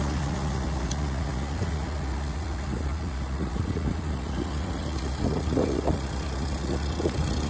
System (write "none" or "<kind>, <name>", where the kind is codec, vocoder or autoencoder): vocoder, Vocos